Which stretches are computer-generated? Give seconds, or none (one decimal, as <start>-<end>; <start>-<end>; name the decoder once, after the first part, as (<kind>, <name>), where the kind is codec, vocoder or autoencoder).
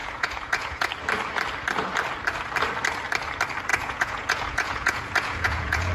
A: 0.0-0.9 (vocoder, Vocos); 3.7-5.9